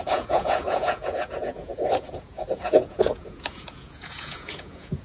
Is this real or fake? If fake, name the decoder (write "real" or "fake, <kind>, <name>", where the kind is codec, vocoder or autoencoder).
fake, vocoder, Vocos